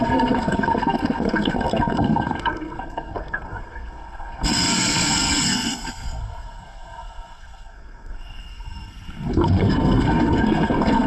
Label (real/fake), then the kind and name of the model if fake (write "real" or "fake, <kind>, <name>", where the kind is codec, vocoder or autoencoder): fake, codec, SNAC